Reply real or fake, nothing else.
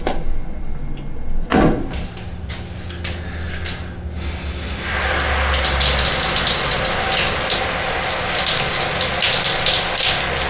real